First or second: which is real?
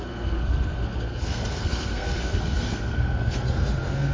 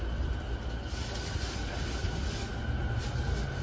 second